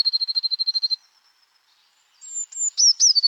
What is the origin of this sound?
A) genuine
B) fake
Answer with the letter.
A